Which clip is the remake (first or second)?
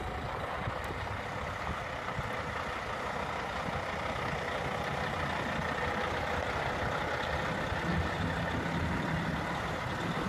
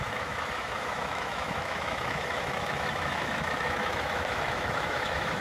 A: second